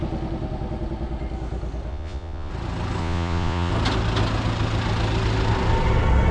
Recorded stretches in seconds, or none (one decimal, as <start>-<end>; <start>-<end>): 0.0-1.9; 2.5-3.0; 3.7-6.3

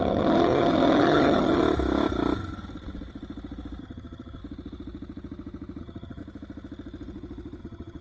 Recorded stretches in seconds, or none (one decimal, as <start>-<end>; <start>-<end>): 1.6-3.8; 4.4-5.8; 6.2-7.6

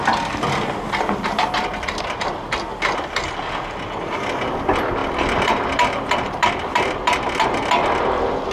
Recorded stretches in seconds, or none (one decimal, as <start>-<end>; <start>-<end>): 0.0-5.0; 8.0-8.5

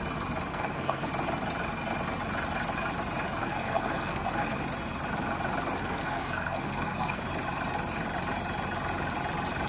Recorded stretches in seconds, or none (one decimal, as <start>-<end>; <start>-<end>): 0.0-0.5; 1.1-3.4; 4.6-5.8; 7.2-9.7